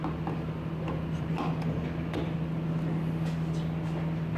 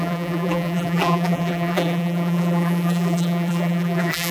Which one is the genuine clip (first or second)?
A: first